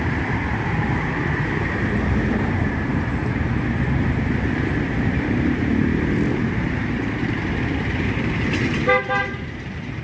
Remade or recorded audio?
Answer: remade